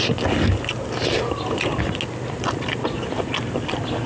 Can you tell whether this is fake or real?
real